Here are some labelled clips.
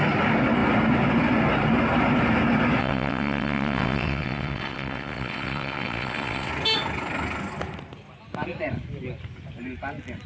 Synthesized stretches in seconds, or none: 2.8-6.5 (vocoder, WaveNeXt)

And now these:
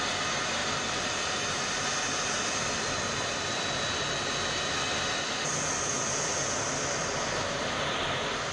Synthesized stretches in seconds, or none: none

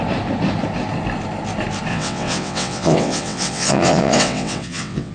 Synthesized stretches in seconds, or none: 1.9-5.1 (vocoder, WaveNeXt)

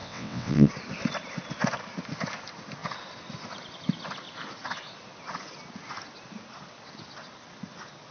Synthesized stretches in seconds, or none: 0.0-0.7 (vocoder, WaveNeXt)

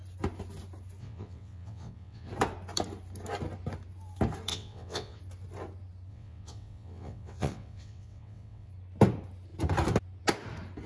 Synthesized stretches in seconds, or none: 1.0-2.3 (vocoder, WaveNeXt); 4.5-5.2; 6.1-8.7

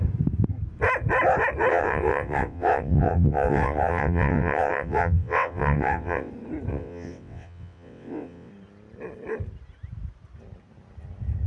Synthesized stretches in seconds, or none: 1.7-6.3 (vocoder, WaveNeXt); 6.7-8.5

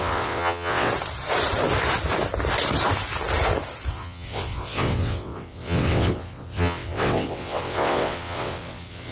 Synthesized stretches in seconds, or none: 0.0-0.9 (vocoder, WaveNeXt); 3.9-9.1